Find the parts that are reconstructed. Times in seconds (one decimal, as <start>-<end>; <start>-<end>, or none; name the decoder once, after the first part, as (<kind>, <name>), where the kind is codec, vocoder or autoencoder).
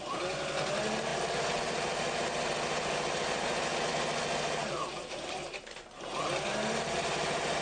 none